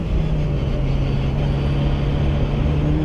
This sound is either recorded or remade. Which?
recorded